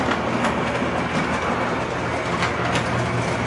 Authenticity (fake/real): real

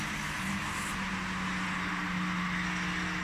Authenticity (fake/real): real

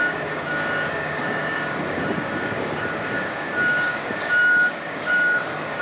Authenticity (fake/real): fake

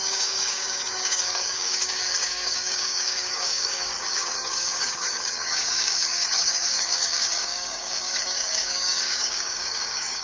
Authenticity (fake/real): fake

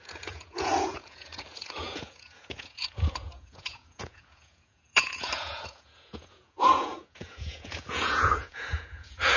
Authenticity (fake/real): fake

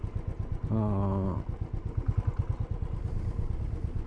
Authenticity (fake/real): real